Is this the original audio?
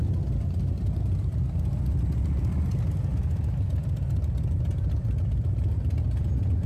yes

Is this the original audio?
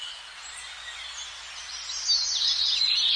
yes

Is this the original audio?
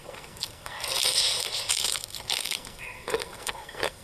no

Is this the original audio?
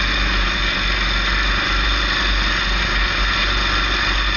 yes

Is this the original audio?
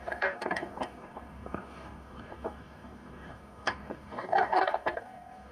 no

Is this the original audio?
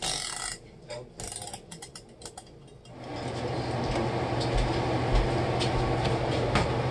yes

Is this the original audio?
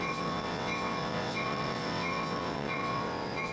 no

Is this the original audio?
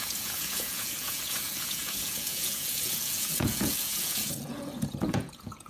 no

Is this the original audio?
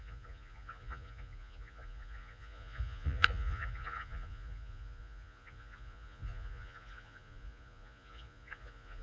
no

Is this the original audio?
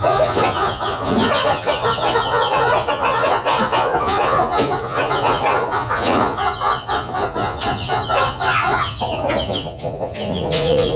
no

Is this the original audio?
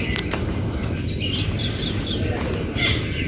yes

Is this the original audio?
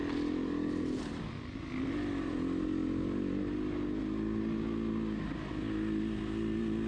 yes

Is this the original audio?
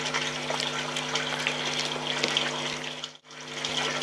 yes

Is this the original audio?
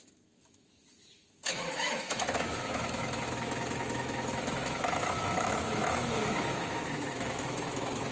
no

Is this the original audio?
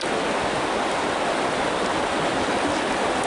yes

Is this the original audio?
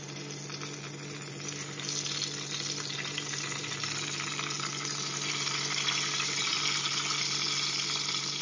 yes